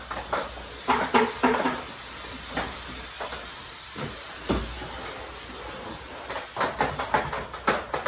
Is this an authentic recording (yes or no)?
yes